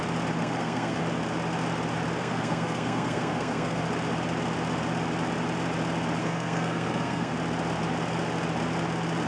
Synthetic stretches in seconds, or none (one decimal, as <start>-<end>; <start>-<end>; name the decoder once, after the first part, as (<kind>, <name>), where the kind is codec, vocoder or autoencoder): 0.4-1.0 (codec, SNAC); 2.2-3.8; 6.2-7.3